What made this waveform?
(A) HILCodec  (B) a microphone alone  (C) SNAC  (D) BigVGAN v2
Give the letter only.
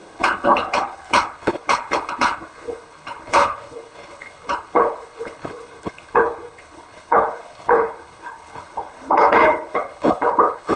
A